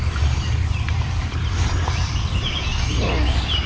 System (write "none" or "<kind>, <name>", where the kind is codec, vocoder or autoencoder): vocoder, BigVGAN v2